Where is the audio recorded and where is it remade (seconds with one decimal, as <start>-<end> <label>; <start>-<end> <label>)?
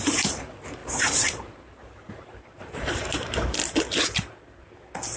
0.0-3.6 remade; 3.6-5.2 recorded